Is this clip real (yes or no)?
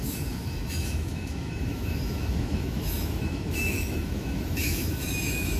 no